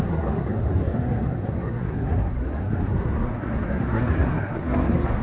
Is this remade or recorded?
remade